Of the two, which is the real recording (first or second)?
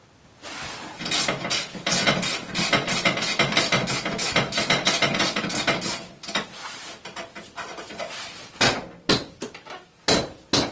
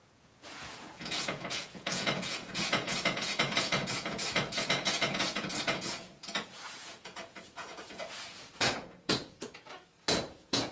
first